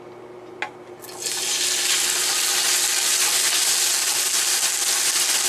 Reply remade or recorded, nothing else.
recorded